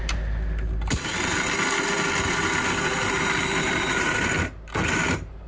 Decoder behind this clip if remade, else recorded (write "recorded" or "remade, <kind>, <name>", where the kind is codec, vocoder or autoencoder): recorded